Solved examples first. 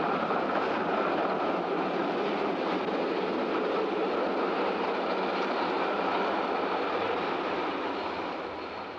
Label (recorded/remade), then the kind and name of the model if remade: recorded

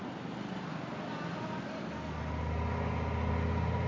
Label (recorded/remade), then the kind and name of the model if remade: recorded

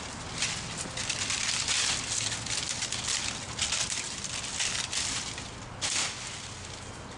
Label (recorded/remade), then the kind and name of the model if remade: recorded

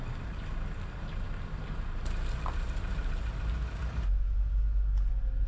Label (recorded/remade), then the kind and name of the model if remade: recorded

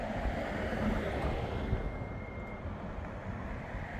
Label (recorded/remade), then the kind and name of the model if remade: recorded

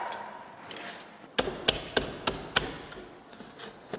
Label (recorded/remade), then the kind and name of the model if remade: recorded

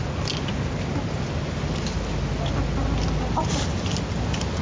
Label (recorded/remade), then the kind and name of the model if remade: recorded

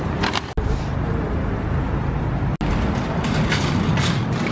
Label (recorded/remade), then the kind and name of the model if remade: recorded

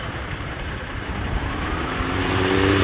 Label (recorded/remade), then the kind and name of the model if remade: remade, vocoder, BigVGAN v2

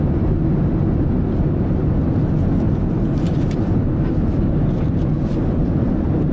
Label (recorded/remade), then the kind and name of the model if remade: recorded